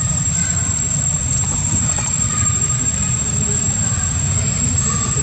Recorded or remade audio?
remade